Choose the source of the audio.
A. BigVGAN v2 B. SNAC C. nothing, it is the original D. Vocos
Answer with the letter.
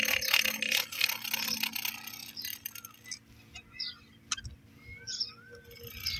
C